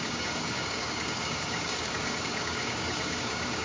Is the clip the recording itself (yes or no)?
no